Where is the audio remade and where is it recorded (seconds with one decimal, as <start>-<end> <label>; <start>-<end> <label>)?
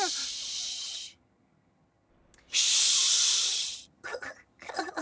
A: 0.0-0.7 recorded; 0.7-2.1 remade; 2.1-3.5 recorded; 3.5-5.0 remade